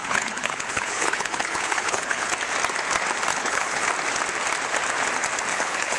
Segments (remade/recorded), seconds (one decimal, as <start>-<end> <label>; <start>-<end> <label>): 0.0-2.3 remade; 2.3-3.3 recorded; 3.3-3.9 remade; 3.9-5.5 recorded; 5.5-6.0 remade